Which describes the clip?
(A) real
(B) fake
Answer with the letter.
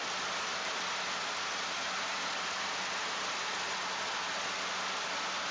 A